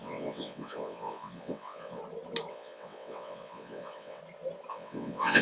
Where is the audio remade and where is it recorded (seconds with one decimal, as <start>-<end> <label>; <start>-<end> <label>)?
0.0-2.0 remade; 2.0-2.5 recorded; 2.5-4.2 remade; 4.2-4.7 recorded; 4.7-5.4 remade